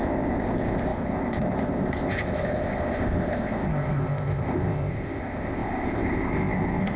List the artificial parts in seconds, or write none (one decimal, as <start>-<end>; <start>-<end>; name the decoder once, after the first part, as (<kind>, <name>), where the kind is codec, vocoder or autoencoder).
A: 0.0-7.0 (codec, ZipCodec)